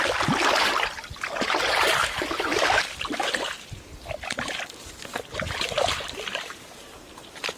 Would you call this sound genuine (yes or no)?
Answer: yes